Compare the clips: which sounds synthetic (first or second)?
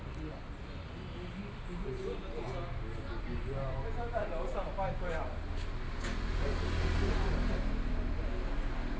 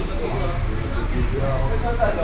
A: second